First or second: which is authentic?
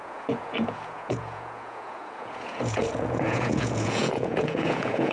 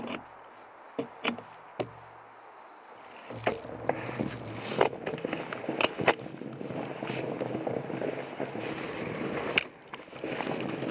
second